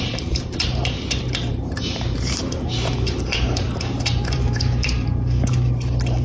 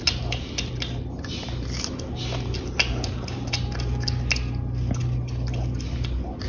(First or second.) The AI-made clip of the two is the first